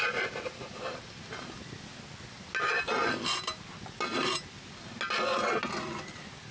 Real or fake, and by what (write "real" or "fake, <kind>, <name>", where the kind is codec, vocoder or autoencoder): real